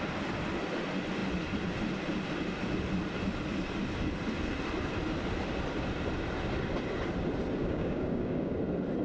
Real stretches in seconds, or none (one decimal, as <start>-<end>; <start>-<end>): 0.0-7.6; 8.5-9.0